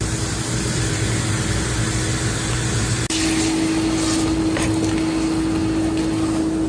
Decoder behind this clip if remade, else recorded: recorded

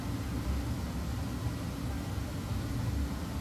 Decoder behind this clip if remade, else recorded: recorded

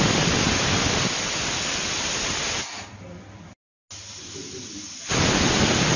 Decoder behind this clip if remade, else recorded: recorded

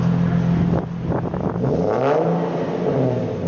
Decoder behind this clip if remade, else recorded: recorded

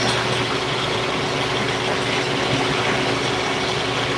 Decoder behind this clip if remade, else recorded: recorded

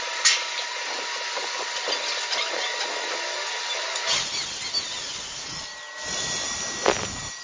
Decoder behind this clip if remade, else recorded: recorded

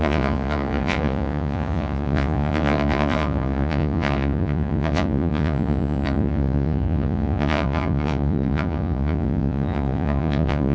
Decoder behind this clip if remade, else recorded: remade, vocoder, Vocos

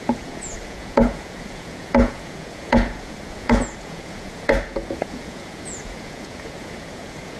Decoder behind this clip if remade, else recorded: remade, vocoder, Vocos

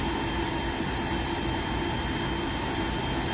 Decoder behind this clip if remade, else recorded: recorded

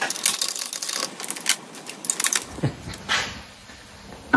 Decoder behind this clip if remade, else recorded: recorded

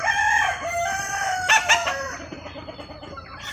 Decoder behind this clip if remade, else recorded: recorded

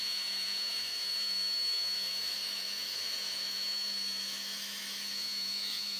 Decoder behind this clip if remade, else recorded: remade, autoencoder, DAC-VAE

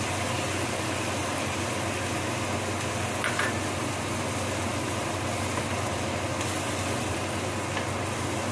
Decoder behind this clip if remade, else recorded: recorded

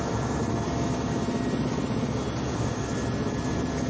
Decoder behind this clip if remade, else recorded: recorded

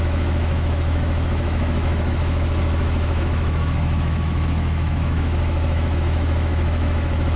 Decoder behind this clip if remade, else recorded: remade, autoencoder, DAC-VAE